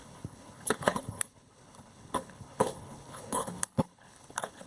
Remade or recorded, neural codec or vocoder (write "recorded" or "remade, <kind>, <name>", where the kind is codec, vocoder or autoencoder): remade, codec, HILCodec